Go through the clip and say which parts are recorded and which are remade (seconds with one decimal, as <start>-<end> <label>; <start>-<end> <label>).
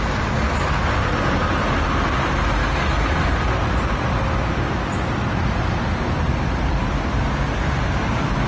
0.0-8.5 recorded